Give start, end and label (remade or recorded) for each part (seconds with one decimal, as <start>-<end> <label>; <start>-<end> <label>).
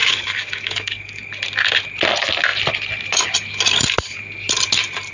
0.0-1.3 remade; 1.3-5.1 recorded